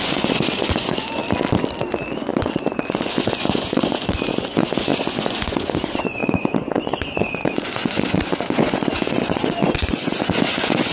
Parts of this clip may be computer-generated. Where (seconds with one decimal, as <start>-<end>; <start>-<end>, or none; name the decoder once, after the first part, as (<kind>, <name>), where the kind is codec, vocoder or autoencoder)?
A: 0.0-1.2 (vocoder, Vocos); 1.9-10.9